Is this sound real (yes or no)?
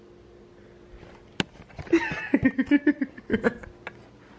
yes